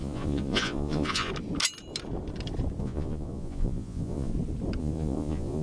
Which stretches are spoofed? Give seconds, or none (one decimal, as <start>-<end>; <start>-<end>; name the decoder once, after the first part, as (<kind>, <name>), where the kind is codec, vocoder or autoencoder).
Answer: 0.0-1.3 (vocoder, Vocos); 2.8-4.3; 4.8-5.6